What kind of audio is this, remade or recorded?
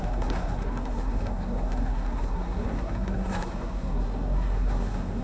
remade